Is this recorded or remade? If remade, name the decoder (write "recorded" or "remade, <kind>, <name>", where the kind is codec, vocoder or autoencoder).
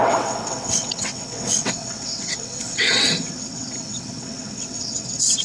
remade, vocoder, WaveNeXt